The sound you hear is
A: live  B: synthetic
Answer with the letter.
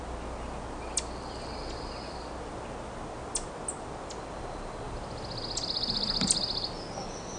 A